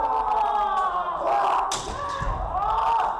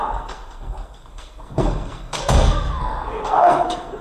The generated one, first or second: second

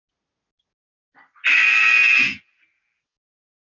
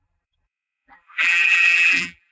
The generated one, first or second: second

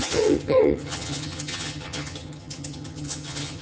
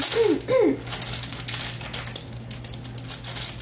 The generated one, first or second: first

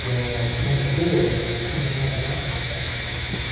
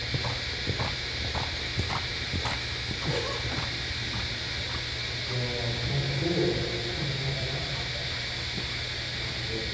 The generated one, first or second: first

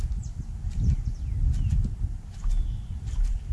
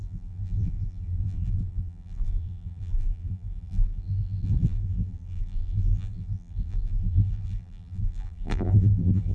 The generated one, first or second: second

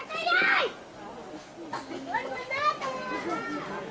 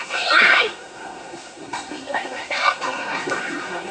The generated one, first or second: second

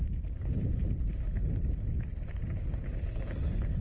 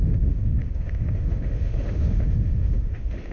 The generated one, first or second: second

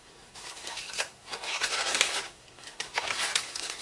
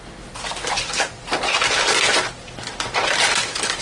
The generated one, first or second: first